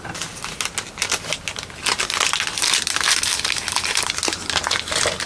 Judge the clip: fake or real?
real